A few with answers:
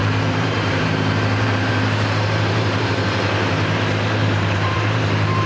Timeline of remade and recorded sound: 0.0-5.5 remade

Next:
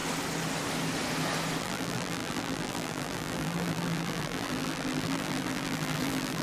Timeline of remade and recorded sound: 0.0-1.6 recorded; 1.6-6.4 remade

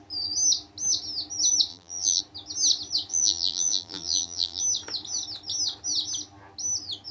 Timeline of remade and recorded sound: 0.0-1.7 recorded; 1.7-2.2 remade; 2.2-3.1 recorded; 3.1-4.6 remade; 4.6-7.1 recorded

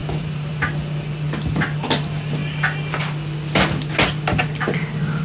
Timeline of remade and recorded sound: 0.0-0.7 remade; 0.7-5.2 recorded